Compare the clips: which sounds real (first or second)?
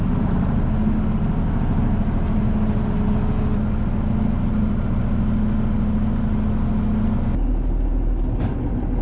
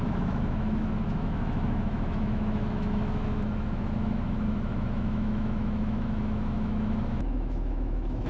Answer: first